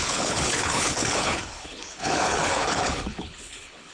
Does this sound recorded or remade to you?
remade